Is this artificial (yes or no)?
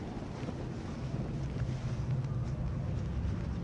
no